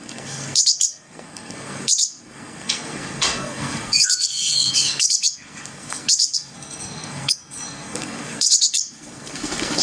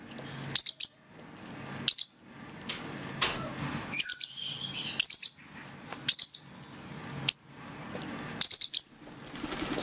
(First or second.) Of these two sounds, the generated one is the first